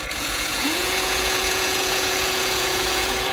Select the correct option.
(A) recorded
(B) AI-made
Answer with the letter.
B